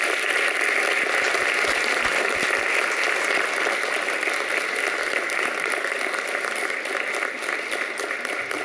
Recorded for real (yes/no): yes